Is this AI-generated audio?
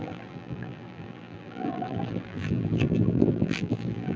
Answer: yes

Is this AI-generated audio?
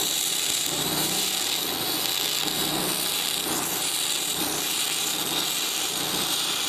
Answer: yes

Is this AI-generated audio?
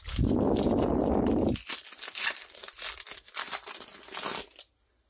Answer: no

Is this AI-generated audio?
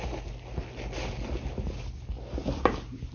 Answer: no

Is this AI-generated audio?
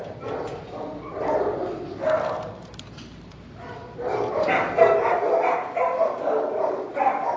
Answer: no